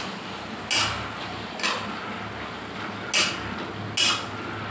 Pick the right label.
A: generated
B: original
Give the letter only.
B